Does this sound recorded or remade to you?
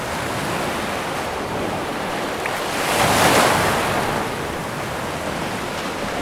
recorded